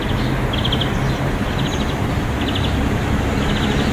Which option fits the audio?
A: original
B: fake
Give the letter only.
A